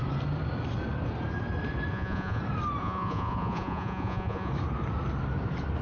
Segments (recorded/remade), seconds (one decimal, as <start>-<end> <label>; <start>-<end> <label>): 0.0-1.9 recorded; 1.9-2.4 remade; 2.4-2.8 recorded; 2.8-4.5 remade; 4.5-5.8 recorded